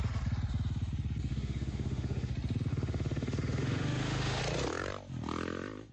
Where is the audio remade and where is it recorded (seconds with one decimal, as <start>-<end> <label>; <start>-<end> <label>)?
0.0-1.3 recorded; 1.3-2.3 remade; 2.3-2.7 recorded; 2.7-4.4 remade; 4.4-5.9 recorded